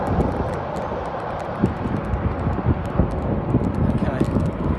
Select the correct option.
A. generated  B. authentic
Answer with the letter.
B